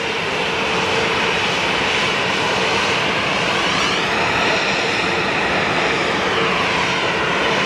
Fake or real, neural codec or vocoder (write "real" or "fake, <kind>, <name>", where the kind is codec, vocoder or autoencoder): fake, vocoder, BigVGAN v2